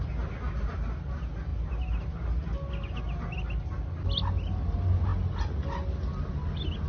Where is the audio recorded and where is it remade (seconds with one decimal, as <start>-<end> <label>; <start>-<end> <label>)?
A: 0.0-6.9 recorded